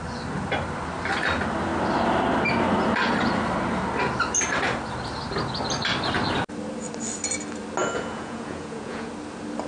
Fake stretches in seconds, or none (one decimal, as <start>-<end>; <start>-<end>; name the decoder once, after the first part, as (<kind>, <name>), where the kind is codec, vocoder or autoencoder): 7.8-9.1 (vocoder, Vocos)